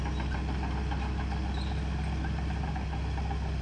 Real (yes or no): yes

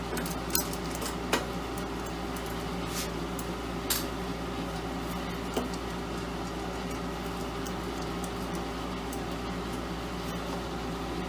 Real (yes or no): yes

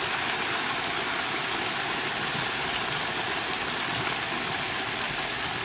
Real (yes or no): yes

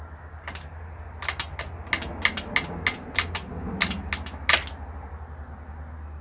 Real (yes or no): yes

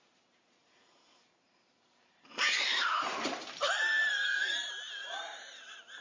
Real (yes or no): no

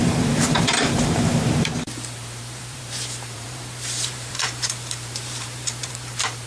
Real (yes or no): no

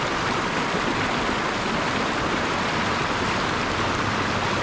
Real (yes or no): no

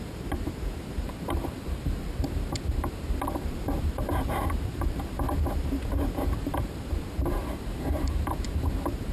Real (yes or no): no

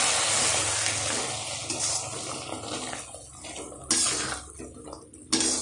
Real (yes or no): yes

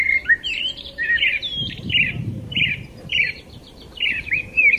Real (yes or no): no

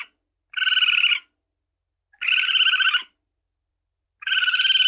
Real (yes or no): yes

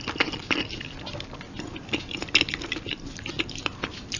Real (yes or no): no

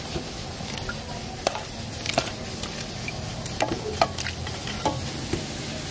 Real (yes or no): no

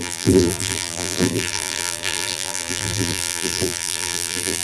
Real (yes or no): no